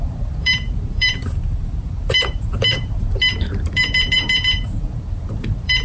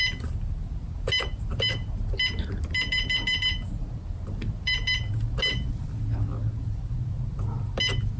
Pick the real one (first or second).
second